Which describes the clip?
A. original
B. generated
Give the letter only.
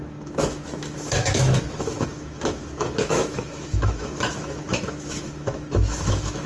B